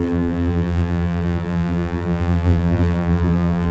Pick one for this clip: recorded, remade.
remade